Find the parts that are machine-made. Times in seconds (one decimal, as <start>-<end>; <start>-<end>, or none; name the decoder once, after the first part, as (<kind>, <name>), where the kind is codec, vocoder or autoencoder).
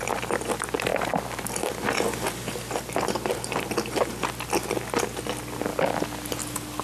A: none